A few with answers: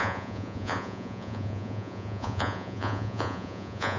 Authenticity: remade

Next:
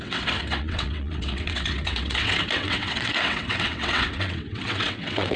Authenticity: remade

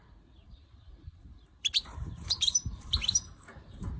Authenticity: remade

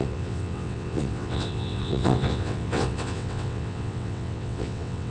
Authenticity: remade